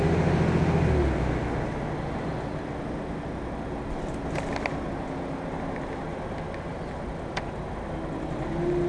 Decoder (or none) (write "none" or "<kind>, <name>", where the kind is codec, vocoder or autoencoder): none